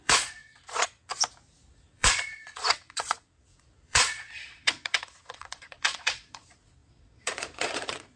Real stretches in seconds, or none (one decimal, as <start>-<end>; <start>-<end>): 1.1-1.7

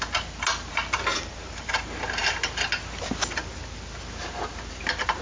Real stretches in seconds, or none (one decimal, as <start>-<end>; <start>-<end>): 0.0-1.1; 1.7-5.2

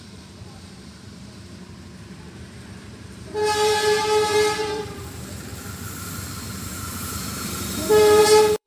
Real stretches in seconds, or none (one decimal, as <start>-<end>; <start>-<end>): 5.5-6.3